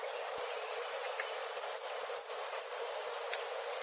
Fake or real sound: real